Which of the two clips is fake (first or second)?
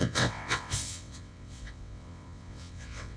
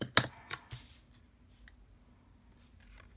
first